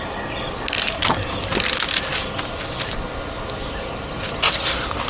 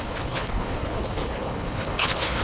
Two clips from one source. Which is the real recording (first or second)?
first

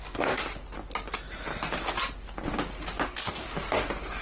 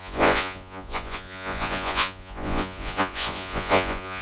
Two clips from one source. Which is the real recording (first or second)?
first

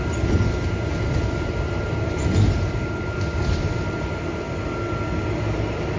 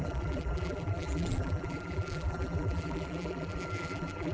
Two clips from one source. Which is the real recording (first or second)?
first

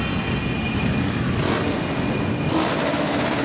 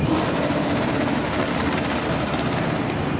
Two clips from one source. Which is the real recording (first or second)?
first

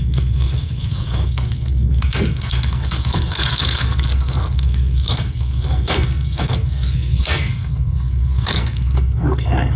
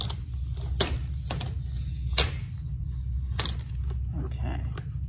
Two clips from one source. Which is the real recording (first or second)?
second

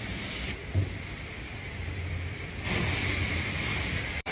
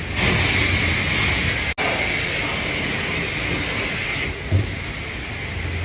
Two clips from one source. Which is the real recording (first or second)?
second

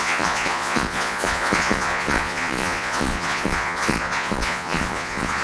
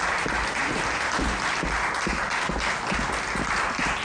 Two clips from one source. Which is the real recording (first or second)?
second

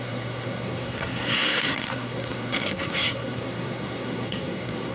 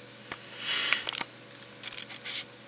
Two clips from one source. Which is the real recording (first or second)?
second